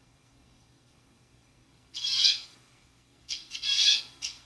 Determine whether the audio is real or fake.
fake